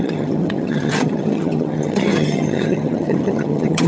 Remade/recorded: remade